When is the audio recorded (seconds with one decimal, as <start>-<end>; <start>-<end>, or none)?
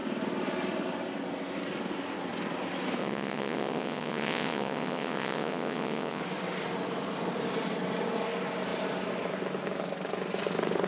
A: 0.0-3.0; 6.2-10.9